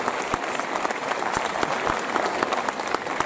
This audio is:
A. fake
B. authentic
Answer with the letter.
B